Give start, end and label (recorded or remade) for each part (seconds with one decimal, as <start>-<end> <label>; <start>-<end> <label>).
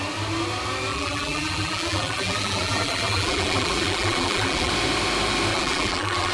0.0-0.9 recorded; 0.9-4.7 remade; 4.7-5.5 recorded; 5.5-6.3 remade